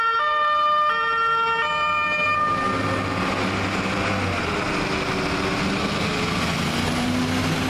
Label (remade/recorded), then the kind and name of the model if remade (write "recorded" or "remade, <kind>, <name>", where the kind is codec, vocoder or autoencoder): recorded